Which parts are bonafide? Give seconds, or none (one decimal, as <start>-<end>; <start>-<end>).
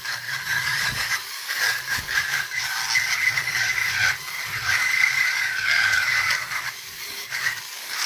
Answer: 2.8-3.3; 3.8-4.7